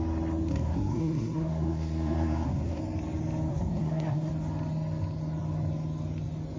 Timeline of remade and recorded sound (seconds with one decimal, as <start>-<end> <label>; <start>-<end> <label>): 0.0-0.5 recorded; 0.5-2.8 remade; 2.8-3.5 recorded; 3.5-4.3 remade; 4.3-6.6 recorded